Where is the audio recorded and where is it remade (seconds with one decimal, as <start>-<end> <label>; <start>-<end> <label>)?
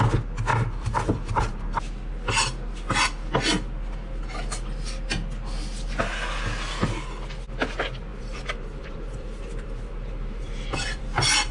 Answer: 0.0-0.5 recorded; 0.5-1.8 remade; 1.8-8.1 recorded; 8.1-11.5 remade